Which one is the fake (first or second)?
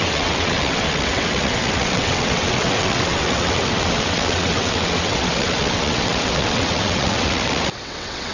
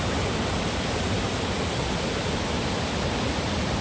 first